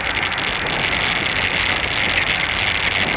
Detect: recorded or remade recorded